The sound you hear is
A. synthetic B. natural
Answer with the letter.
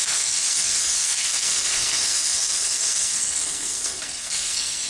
A